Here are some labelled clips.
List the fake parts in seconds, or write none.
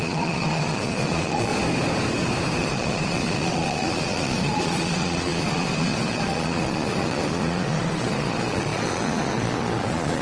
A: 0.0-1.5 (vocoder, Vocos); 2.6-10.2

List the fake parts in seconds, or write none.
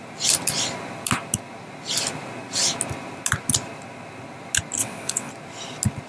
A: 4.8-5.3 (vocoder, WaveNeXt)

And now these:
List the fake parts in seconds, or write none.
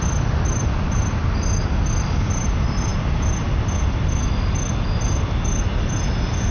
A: none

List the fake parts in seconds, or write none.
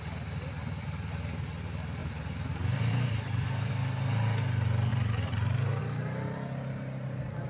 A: 2.0-3.7 (vocoder, BigVGAN v2); 4.9-5.8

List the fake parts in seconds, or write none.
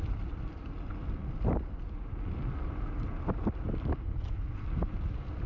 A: 1.2-4.3 (vocoder, BigVGAN v2)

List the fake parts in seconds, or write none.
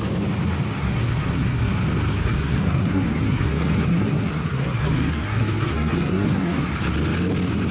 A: 0.8-1.7 (codec, SNAC); 2.1-6.7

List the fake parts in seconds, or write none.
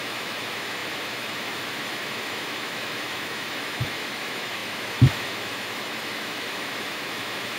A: 0.0-7.6 (autoencoder, DAC-VAE)